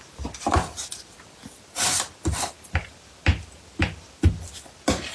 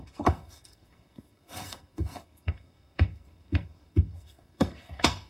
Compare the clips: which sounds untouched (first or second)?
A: first